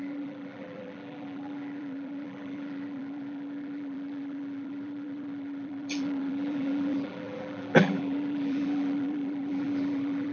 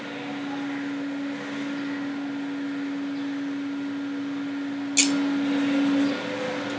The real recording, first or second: second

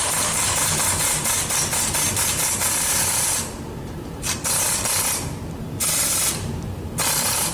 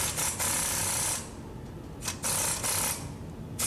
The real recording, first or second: second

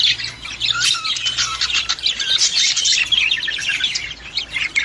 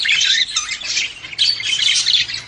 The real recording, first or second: first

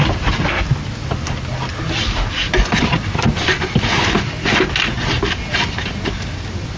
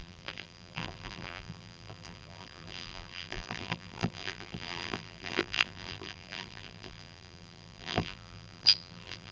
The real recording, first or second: first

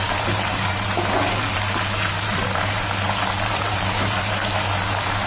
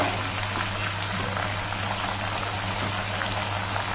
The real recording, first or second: second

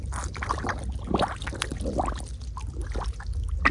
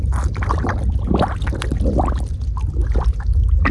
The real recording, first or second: first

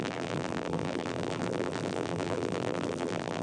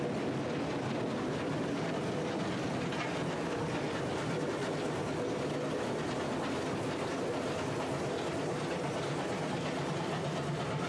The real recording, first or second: second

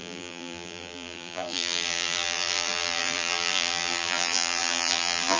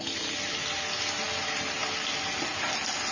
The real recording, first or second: second